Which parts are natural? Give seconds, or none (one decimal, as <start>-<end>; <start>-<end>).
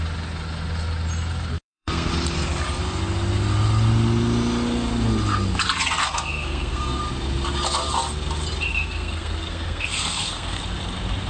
0.0-1.5; 2.1-6.0; 7.0-8.7; 10.6-11.3